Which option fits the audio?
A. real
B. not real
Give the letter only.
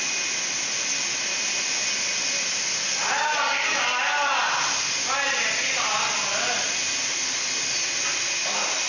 A